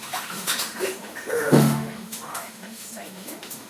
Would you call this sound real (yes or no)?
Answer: no